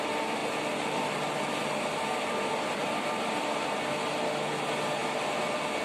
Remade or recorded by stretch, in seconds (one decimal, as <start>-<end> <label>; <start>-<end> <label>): 0.0-5.0 recorded; 5.0-5.8 remade